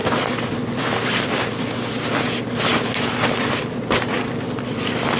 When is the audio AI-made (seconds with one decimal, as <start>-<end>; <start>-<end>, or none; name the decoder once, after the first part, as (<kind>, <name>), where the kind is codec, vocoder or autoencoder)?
none